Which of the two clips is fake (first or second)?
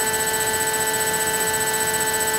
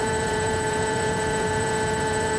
second